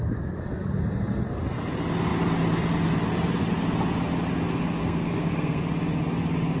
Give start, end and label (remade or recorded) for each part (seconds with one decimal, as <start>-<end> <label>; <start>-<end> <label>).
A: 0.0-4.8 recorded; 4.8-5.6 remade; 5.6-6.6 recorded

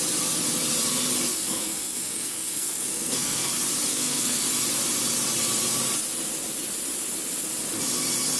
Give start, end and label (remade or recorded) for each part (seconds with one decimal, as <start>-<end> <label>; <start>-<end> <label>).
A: 0.0-1.3 recorded; 1.3-3.5 remade; 3.5-3.9 recorded; 3.9-4.4 remade; 4.4-8.4 recorded

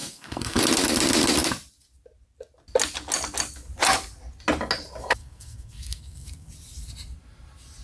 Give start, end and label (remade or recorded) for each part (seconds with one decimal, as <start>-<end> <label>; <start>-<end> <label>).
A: 0.0-0.6 remade; 0.6-5.2 recorded; 5.2-6.5 remade; 6.5-7.8 recorded

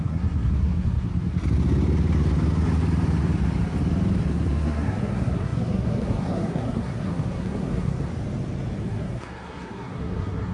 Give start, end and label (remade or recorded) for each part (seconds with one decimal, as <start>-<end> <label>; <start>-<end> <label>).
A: 0.0-1.1 remade; 1.1-4.3 recorded; 4.3-8.1 remade; 8.1-8.8 recorded; 8.8-10.5 remade

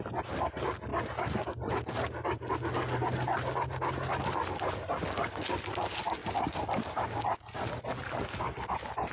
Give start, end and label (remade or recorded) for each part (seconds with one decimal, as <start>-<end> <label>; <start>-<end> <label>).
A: 0.0-9.1 recorded

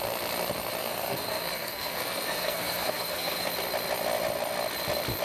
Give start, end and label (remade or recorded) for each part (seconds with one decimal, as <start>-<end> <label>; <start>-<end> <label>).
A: 0.0-0.8 recorded; 0.8-3.5 remade; 3.5-5.2 recorded

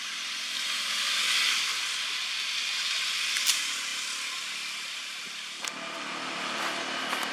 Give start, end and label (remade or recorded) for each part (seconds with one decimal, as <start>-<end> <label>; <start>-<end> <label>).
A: 0.0-7.3 recorded

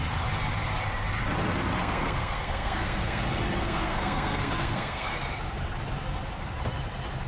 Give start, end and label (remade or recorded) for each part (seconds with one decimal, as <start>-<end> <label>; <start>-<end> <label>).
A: 0.0-1.8 recorded; 1.8-3.2 remade; 3.2-3.6 recorded; 3.6-5.1 remade; 5.1-7.3 recorded